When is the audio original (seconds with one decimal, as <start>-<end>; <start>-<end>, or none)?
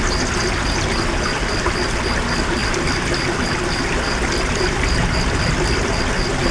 0.0-6.5